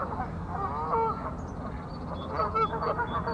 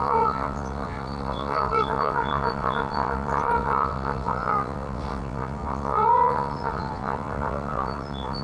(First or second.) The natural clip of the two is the first